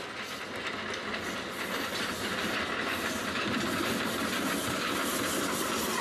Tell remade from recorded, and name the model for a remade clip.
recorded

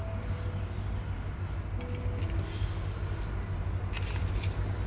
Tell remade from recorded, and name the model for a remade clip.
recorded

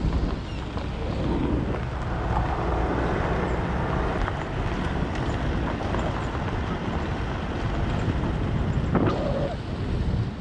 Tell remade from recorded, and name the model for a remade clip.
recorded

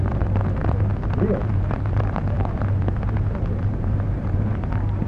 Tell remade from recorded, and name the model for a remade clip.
remade, vocoder, BigVGAN v2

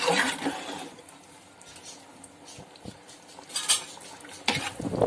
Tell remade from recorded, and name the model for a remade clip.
recorded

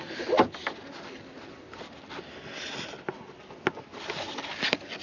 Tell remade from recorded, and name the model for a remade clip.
recorded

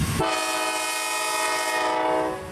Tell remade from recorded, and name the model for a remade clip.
recorded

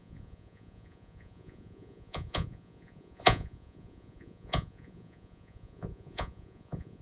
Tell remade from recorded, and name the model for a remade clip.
remade, vocoder, Vocos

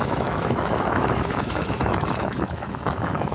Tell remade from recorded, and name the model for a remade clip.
remade, autoencoder, DAC-VAE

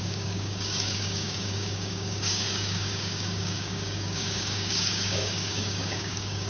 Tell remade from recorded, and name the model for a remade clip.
remade, codec, DAC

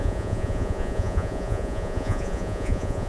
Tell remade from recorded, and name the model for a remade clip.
remade, vocoder, Vocos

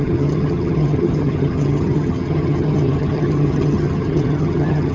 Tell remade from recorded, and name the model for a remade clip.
remade, vocoder, HiFi-GAN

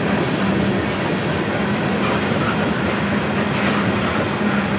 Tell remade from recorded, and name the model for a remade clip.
recorded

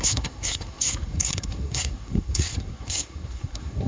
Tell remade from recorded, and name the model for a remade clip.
remade, codec, SNAC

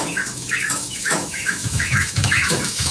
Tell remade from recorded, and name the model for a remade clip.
remade, autoencoder, DAC-VAE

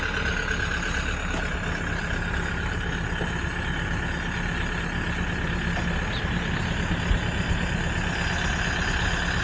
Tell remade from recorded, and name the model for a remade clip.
recorded